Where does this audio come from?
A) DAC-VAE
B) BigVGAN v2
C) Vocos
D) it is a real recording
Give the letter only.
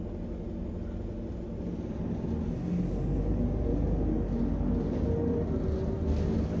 D